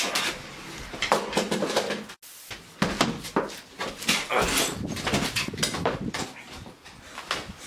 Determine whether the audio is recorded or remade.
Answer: recorded